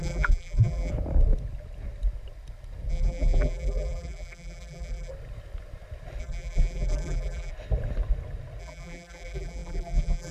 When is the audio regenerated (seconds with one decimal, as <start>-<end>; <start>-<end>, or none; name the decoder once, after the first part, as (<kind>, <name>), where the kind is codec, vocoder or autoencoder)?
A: 0.0-0.9 (vocoder, BigVGAN v2); 2.9-5.1; 6.2-7.5; 8.6-10.3